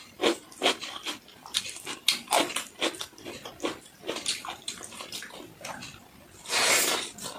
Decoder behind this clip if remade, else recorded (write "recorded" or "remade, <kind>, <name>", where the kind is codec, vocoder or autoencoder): remade, vocoder, BigVGAN v2